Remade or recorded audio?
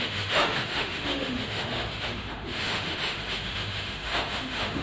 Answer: remade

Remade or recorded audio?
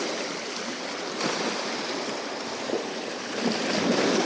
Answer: recorded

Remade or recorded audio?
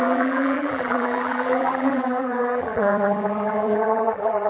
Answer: remade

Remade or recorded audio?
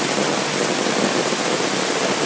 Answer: recorded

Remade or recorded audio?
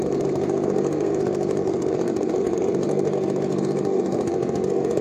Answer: remade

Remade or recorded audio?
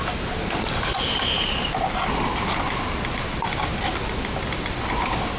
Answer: recorded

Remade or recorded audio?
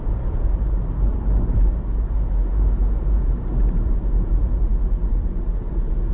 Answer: remade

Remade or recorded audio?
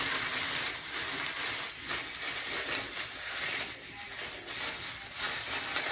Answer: recorded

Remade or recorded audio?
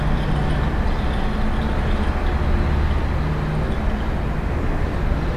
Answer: recorded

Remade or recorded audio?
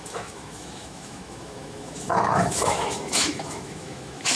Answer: remade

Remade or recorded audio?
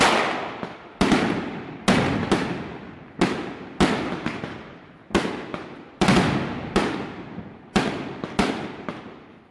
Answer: recorded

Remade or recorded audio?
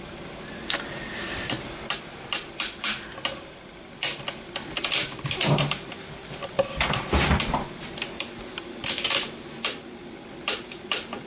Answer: recorded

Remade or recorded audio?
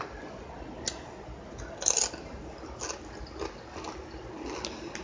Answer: recorded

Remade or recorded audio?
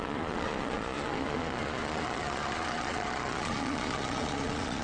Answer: remade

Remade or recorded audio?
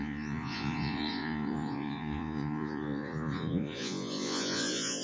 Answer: remade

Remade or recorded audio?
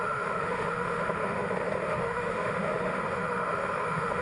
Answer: remade